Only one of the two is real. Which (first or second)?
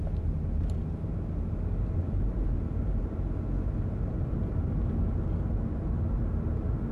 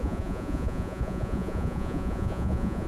first